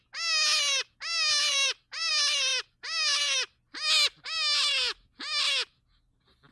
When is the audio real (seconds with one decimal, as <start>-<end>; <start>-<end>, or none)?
0.0-1.5; 2.1-6.5